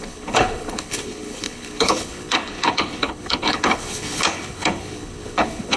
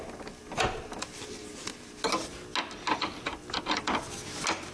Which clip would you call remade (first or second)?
first